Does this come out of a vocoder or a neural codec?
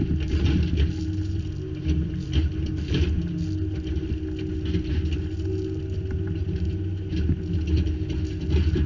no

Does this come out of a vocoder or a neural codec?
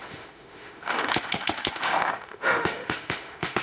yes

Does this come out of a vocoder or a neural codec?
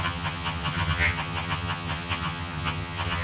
yes